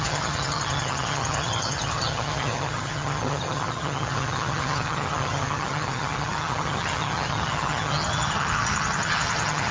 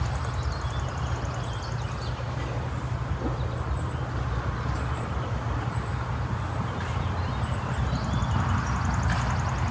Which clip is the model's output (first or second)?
first